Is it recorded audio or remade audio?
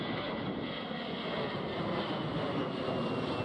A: recorded